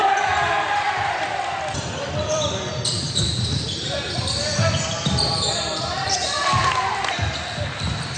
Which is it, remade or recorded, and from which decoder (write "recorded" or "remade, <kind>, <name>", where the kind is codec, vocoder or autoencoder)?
remade, vocoder, BigVGAN v2